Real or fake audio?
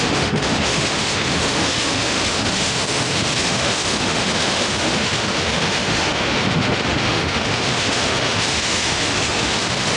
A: fake